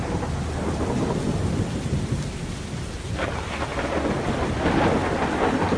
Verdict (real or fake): real